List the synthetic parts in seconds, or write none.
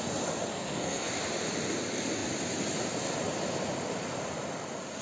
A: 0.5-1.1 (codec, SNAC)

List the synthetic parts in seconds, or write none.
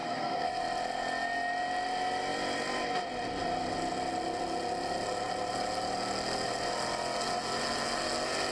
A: 0.0-0.6 (codec, SNAC)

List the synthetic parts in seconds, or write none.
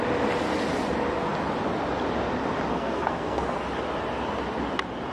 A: 2.7-3.4 (codec, SNAC)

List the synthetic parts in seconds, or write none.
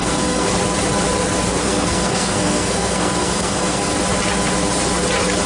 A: 0.0-0.5 (codec, SNAC); 1.6-3.9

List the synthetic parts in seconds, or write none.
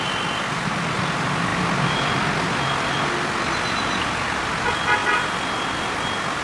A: none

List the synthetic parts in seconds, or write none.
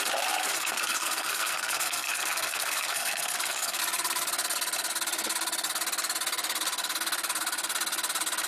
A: 0.4-3.8 (codec, SNAC)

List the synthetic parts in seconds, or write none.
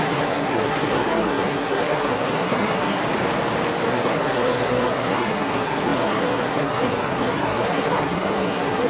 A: 0.0-3.0 (codec, SNAC); 3.9-8.9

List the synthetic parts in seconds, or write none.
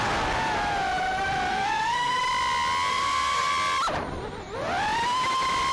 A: 1.5-2.2 (codec, SNAC); 2.9-3.5